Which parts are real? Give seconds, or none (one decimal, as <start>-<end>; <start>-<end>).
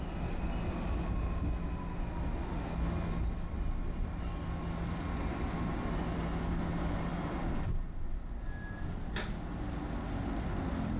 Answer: 0.0-11.0